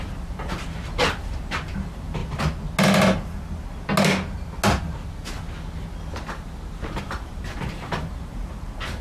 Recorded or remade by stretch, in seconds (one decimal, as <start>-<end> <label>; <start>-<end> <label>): 0.0-2.2 remade; 2.2-7.0 recorded; 7.0-9.0 remade